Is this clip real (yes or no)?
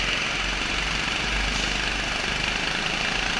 yes